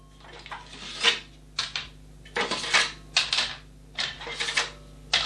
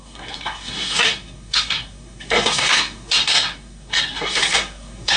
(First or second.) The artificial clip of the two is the second